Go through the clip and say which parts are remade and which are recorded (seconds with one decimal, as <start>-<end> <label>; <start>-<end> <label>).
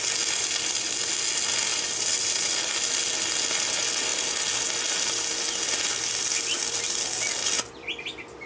0.0-1.7 recorded; 1.7-2.6 remade; 2.6-8.5 recorded